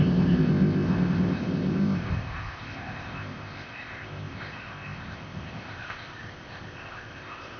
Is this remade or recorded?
remade